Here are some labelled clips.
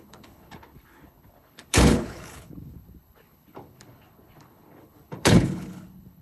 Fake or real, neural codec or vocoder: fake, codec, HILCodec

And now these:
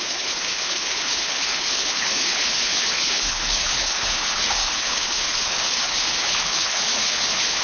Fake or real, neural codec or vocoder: fake, codec, HILCodec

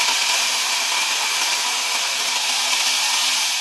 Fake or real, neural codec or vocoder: real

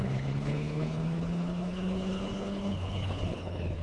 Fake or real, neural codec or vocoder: fake, codec, HILCodec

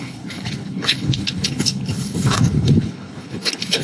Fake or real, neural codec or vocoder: fake, codec, HILCodec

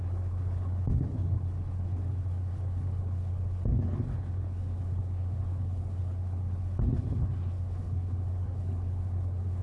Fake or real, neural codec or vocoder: fake, codec, HILCodec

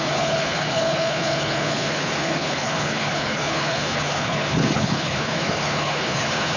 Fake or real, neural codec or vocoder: fake, codec, HILCodec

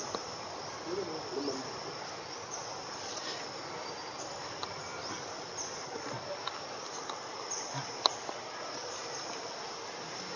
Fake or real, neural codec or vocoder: real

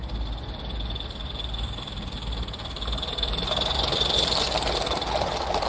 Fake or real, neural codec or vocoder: real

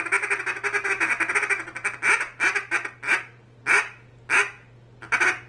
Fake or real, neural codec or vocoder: real